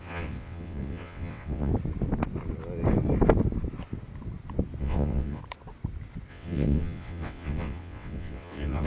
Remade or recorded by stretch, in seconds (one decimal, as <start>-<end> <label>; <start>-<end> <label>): 0.0-1.7 remade; 1.7-4.8 recorded; 4.8-5.4 remade; 5.4-6.3 recorded; 6.3-8.9 remade